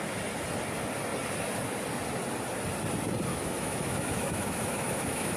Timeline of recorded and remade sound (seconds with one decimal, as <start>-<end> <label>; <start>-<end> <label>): 0.0-3.3 recorded; 3.3-5.4 remade